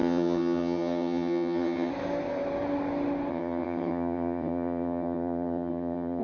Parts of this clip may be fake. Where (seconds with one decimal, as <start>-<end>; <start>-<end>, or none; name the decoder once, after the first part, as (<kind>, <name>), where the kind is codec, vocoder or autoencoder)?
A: 0.0-1.9 (vocoder, HiFi-GAN); 3.3-6.2